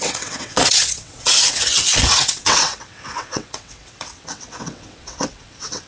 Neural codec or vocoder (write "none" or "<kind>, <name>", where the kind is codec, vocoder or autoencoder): vocoder, WaveNeXt